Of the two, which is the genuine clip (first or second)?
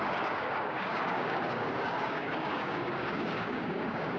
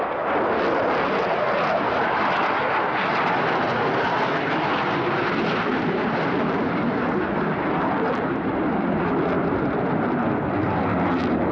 second